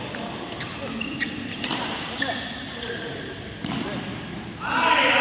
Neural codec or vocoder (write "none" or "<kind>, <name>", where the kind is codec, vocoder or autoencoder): none